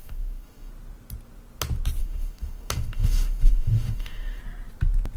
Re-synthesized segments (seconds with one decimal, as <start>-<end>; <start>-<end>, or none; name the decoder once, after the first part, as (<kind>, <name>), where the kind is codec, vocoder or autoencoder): 0.0-0.7 (autoencoder, DAC-VAE); 2.0-4.4